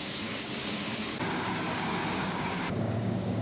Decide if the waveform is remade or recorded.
remade